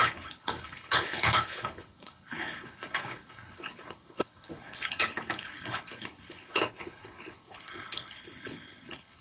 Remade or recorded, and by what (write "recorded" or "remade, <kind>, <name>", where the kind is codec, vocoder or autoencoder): remade, codec, HILCodec